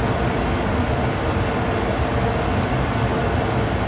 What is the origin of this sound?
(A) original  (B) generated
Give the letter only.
A